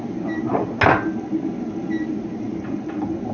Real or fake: real